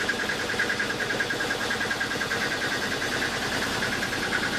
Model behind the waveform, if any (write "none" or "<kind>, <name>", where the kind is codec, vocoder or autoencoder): none